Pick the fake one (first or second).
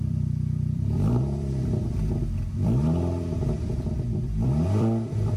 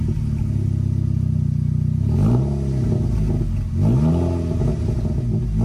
first